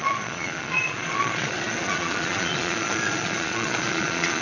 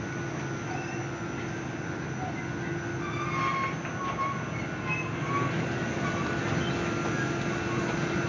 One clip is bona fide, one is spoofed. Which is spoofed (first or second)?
first